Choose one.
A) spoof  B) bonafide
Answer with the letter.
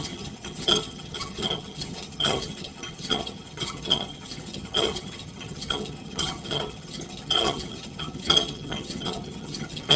A